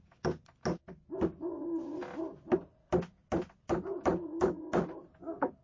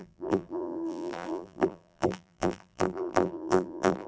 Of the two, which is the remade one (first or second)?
second